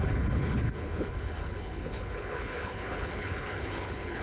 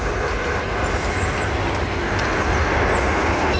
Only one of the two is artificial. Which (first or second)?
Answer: first